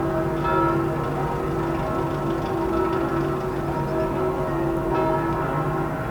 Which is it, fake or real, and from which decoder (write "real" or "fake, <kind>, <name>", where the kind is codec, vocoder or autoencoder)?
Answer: real